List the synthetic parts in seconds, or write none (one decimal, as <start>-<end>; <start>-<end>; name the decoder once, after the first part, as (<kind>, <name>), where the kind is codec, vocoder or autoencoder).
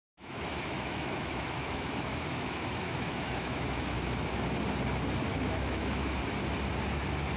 0.0-4.4 (autoencoder, DAC-VAE); 5.3-6.2